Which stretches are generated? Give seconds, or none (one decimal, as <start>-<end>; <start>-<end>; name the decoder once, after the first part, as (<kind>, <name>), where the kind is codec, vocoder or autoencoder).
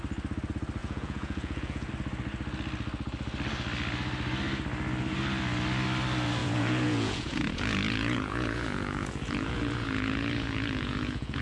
0.8-1.9 (vocoder, Vocos); 6.4-11.4